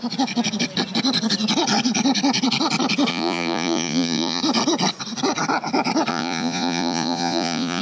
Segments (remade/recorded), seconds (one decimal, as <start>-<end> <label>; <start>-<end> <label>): 0.0-3.1 recorded; 3.1-4.4 remade; 4.4-6.1 recorded; 6.1-7.8 remade